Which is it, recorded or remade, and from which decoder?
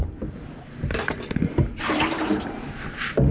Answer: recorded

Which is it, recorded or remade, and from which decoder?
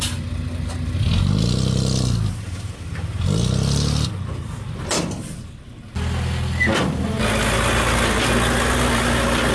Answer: recorded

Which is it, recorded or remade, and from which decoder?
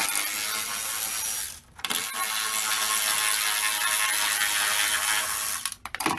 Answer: recorded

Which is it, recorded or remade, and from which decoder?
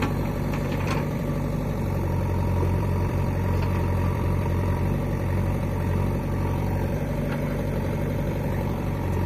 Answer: remade, vocoder, BigVGAN v2